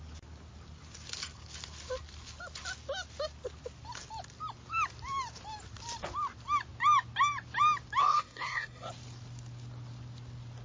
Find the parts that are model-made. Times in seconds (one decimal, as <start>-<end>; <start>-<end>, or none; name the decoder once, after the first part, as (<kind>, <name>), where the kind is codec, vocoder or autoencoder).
8.0-8.9 (codec, SNAC)